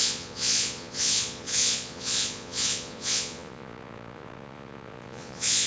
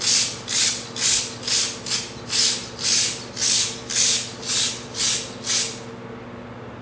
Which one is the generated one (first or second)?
first